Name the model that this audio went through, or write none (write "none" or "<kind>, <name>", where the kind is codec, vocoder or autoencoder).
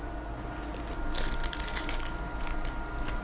none